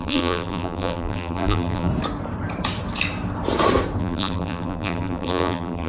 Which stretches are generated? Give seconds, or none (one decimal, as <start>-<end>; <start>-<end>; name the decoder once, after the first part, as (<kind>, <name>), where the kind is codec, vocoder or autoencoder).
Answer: 0.0-1.9 (vocoder, BigVGAN v2); 4.0-5.9